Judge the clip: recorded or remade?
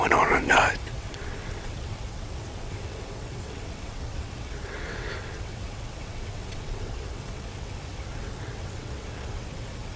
remade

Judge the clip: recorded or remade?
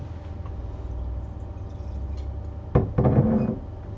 recorded